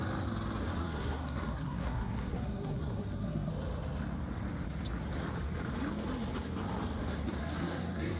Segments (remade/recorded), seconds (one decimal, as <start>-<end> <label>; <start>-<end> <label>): 0.0-0.8 recorded; 0.8-3.5 remade; 3.5-7.4 recorded; 7.4-8.2 remade